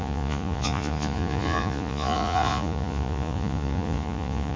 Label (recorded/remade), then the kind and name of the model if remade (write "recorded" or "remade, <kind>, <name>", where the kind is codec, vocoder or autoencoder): remade, vocoder, Vocos